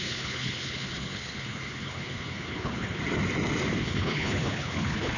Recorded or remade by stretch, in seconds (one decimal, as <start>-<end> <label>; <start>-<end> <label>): 0.0-3.0 remade; 3.0-3.8 recorded; 3.8-5.2 remade